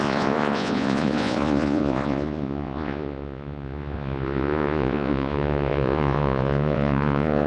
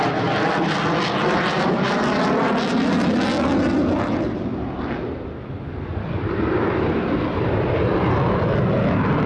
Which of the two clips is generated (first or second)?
first